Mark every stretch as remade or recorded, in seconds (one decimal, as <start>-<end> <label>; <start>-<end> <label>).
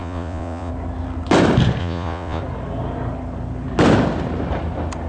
0.0-0.7 remade; 0.7-1.8 recorded; 1.8-2.4 remade; 2.4-5.1 recorded